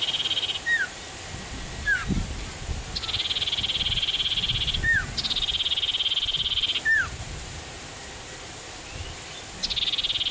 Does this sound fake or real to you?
real